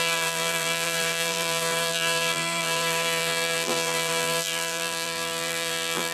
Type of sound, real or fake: fake